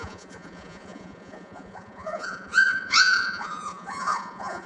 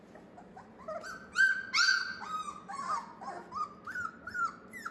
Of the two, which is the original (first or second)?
second